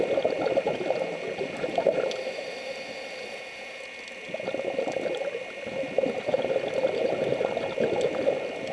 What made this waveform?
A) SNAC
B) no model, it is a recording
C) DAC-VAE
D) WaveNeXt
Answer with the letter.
B